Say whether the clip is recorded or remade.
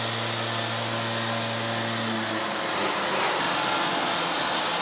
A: recorded